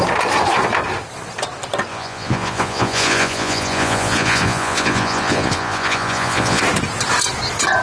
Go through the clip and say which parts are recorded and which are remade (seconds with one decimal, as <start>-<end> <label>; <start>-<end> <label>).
0.0-1.9 recorded; 1.9-6.6 remade; 6.6-7.8 recorded

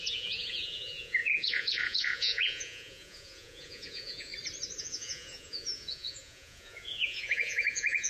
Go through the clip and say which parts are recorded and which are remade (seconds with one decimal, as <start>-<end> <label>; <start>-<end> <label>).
0.0-4.3 remade; 4.3-4.8 recorded; 4.8-8.1 remade

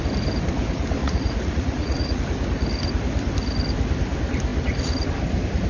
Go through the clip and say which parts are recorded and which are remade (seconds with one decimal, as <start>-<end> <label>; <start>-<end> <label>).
0.0-1.0 recorded; 1.0-2.2 remade; 2.2-5.7 recorded

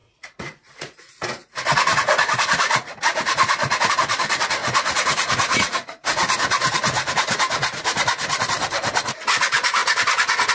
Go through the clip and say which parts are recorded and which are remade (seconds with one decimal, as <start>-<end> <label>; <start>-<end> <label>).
0.0-3.9 remade; 3.9-4.6 recorded; 4.6-8.4 remade; 8.4-10.5 recorded

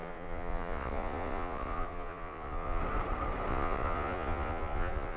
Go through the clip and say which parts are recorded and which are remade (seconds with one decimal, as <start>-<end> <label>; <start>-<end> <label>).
0.0-2.8 remade; 2.8-3.5 recorded; 3.5-5.2 remade

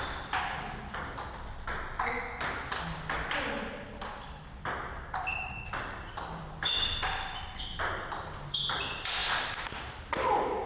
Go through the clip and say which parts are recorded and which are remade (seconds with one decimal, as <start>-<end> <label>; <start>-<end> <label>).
0.0-10.7 recorded

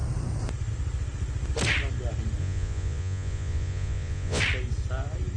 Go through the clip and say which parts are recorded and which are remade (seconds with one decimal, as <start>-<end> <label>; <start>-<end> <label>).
0.0-2.4 recorded; 2.4-4.4 remade; 4.4-5.4 recorded

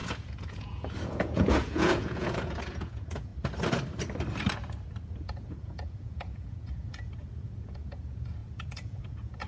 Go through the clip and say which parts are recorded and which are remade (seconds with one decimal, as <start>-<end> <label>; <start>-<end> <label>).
0.0-3.3 remade; 3.3-5.1 recorded; 5.1-9.5 remade